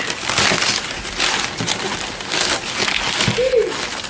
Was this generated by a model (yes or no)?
no